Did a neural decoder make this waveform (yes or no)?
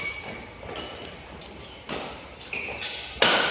no